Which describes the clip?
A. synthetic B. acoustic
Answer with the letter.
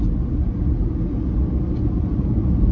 B